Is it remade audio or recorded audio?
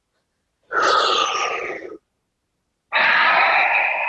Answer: recorded